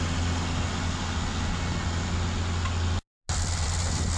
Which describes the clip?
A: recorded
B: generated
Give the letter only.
A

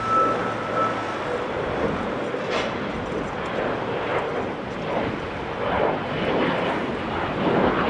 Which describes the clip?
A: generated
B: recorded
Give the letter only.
B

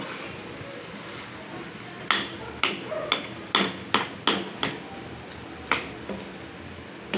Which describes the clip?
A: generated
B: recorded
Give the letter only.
B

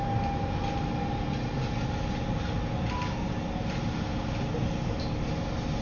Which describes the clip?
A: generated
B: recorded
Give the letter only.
B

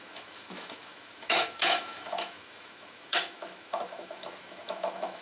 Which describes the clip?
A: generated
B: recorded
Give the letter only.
A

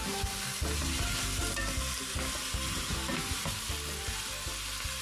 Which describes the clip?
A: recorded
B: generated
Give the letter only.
A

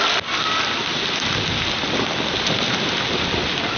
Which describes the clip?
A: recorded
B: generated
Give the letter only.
A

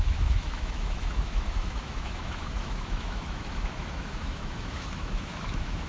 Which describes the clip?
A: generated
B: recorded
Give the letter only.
A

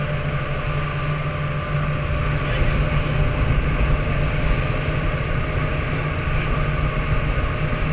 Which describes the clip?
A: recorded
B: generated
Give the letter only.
A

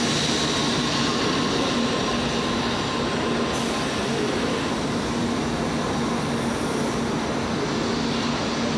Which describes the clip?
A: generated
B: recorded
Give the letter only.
B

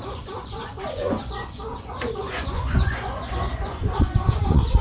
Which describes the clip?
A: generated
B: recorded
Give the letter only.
A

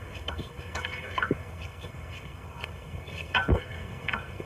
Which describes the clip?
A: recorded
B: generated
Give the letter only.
B